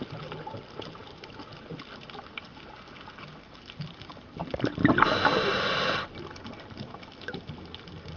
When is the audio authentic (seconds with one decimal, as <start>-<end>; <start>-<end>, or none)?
0.0-8.2